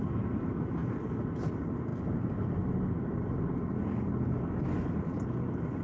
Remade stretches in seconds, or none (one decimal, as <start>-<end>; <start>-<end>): 0.8-1.4